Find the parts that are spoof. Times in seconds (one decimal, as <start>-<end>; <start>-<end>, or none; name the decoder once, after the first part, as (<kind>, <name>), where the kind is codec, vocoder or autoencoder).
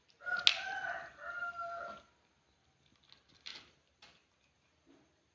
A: 0.5-1.9 (vocoder, BigVGAN v2); 3.5-4.3